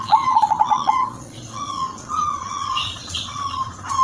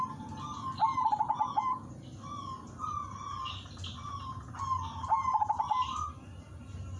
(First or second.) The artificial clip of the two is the first